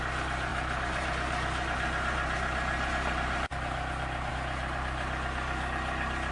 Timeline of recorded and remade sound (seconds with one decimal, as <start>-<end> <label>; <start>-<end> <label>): 0.0-0.5 recorded; 0.5-4.3 remade; 4.3-6.3 recorded